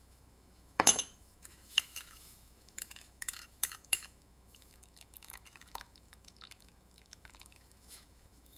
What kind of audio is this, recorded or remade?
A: remade